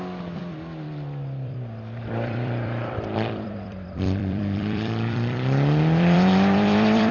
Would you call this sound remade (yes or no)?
yes